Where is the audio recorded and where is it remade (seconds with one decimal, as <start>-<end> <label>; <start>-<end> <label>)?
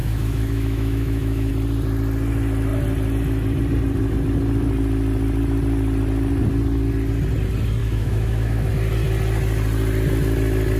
0.0-1.5 remade; 1.5-7.8 recorded; 7.8-8.7 remade; 8.7-10.8 recorded